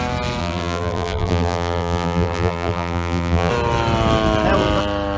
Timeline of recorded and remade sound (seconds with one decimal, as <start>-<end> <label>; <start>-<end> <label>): 0.0-0.4 recorded; 0.4-3.5 remade; 3.5-5.2 recorded